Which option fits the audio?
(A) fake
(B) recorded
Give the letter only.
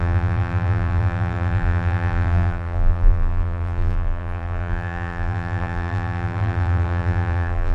A